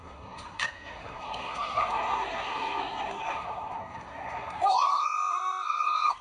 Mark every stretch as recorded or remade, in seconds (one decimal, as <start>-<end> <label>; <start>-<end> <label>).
0.0-6.2 remade